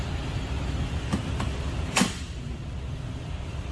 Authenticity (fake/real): real